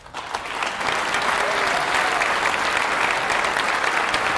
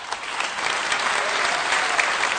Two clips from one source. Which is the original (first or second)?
first